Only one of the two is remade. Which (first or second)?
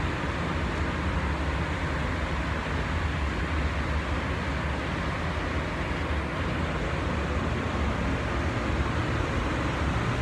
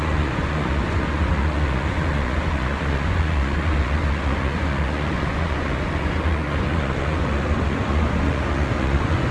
second